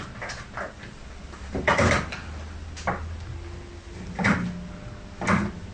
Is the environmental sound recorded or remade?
recorded